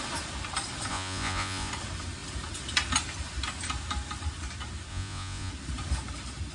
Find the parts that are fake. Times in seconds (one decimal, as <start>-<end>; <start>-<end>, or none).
0.9-1.7; 4.9-5.5